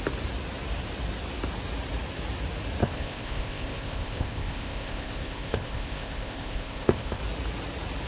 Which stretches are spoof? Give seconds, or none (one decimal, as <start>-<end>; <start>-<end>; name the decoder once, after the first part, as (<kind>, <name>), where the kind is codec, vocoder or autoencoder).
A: 2.8-7.2 (codec, ZipCodec)